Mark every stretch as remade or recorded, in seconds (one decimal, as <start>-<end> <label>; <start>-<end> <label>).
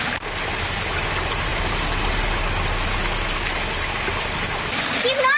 0.0-4.1 recorded; 4.1-5.0 remade; 5.0-5.4 recorded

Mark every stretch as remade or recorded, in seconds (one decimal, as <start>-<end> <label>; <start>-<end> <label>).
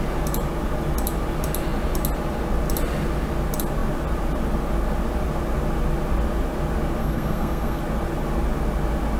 0.0-7.0 recorded; 7.0-7.8 remade; 7.8-9.2 recorded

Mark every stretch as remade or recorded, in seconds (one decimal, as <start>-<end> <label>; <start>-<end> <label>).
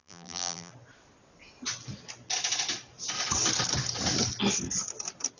0.0-0.7 remade; 0.7-5.4 recorded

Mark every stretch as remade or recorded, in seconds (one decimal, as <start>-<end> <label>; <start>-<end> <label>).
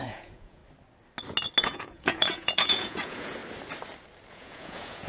0.0-0.6 remade; 0.6-1.6 recorded; 1.6-3.4 remade; 3.4-4.3 recorded; 4.3-5.1 remade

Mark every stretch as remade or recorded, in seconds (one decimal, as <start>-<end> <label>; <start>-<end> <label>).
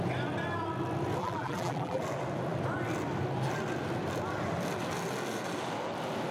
0.0-1.2 recorded; 1.2-2.0 remade; 2.0-6.3 recorded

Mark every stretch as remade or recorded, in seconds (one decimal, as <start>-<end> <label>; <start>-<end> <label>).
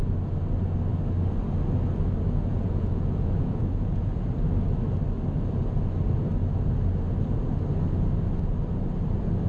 0.0-2.5 recorded; 2.5-4.4 remade; 4.4-9.5 recorded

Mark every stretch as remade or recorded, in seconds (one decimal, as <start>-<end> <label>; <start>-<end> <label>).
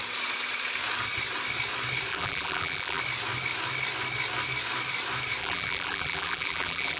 0.0-2.1 recorded; 2.1-3.0 remade; 3.0-5.4 recorded; 5.4-7.0 remade